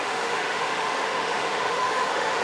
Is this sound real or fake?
fake